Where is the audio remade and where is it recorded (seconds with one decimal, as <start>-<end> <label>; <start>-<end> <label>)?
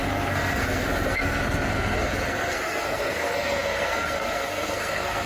0.0-5.3 remade